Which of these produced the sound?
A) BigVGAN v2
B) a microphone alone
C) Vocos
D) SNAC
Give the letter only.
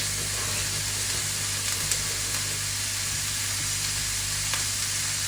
B